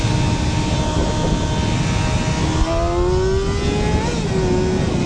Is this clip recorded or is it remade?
recorded